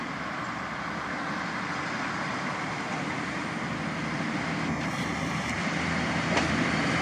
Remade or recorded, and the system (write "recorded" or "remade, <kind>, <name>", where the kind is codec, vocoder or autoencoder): remade, vocoder, BigVGAN v2